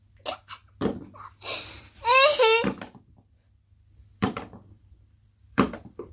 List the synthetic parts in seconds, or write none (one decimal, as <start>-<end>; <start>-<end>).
4.1-6.1

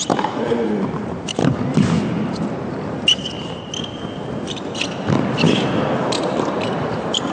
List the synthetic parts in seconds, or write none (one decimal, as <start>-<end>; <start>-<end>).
0.0-1.4; 5.8-7.3

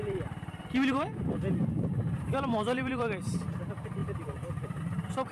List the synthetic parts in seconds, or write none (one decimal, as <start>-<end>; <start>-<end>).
0.0-3.2; 4.0-4.8

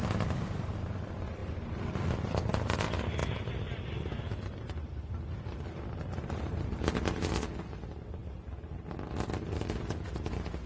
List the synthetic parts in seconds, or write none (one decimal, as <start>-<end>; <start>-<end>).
3.2-6.8

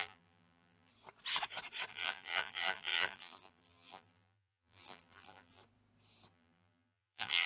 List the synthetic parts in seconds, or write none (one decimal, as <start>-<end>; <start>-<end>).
0.0-0.9; 1.9-5.6; 6.3-7.5